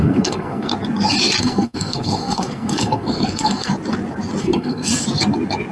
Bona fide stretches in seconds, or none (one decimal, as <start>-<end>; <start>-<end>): 0.7-1.4; 3.7-4.4; 4.9-5.7